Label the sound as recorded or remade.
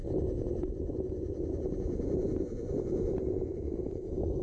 remade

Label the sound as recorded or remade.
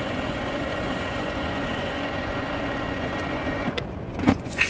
remade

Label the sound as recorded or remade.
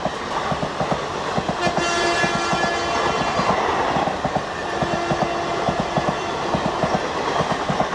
recorded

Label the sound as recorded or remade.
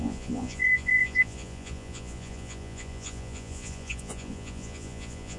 remade